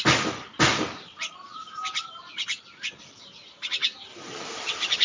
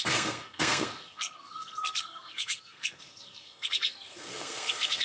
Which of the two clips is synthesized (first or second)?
second